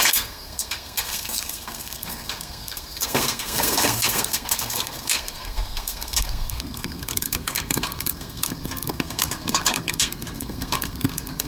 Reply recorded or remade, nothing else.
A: remade